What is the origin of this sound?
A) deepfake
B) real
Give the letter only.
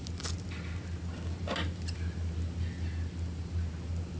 B